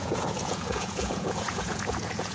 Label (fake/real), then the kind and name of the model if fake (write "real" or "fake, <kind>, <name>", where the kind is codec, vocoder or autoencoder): fake, vocoder, Vocos